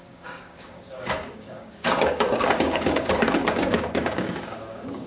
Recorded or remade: remade